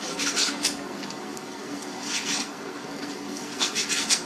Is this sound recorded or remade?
remade